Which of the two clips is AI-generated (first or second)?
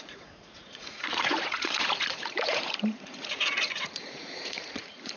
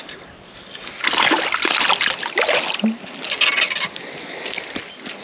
first